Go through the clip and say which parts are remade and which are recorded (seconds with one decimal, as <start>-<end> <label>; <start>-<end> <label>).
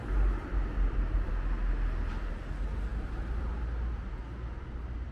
0.0-1.3 remade; 1.3-5.1 recorded